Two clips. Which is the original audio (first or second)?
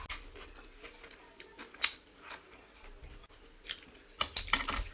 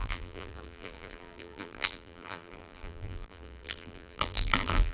first